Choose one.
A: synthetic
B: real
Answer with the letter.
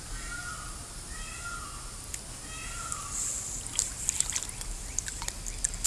B